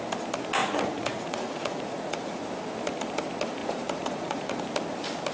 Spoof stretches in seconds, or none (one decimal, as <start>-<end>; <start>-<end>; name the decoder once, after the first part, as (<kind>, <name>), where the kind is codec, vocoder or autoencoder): 0.6-2.4 (vocoder, Vocos); 3.6-4.6